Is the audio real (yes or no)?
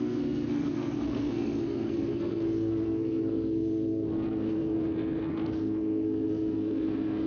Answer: no